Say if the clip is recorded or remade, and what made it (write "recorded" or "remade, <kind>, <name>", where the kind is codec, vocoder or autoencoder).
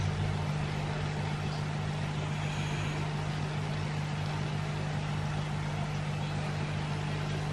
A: recorded